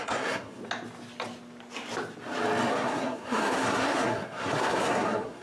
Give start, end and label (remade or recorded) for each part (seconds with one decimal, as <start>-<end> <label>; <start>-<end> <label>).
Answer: 0.0-0.6 remade; 0.6-2.7 recorded; 2.7-5.4 remade